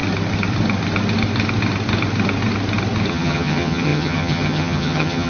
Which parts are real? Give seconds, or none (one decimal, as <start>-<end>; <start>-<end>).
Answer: 0.0-3.1